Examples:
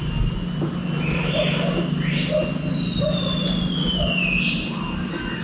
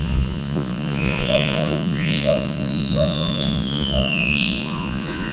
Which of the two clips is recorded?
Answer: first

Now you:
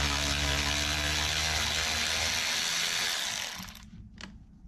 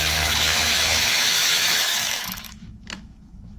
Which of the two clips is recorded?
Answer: first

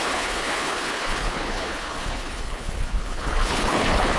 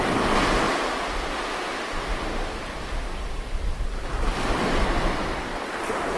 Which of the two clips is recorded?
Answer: second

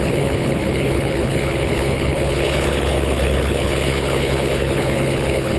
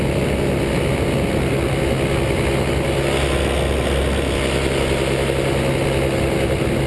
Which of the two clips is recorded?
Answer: second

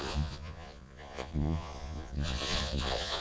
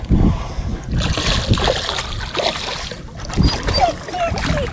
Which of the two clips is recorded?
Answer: second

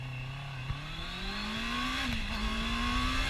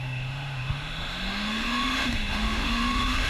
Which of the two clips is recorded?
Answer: first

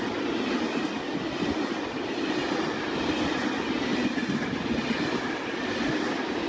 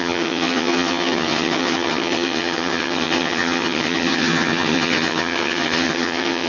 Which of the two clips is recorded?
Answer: first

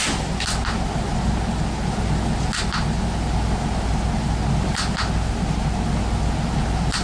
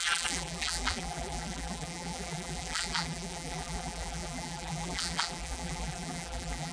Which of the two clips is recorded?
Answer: first